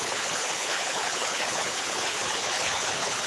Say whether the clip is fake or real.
fake